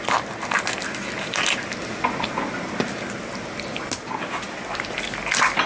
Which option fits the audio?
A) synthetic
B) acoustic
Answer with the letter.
B